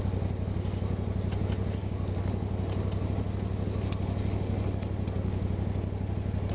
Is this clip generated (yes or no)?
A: no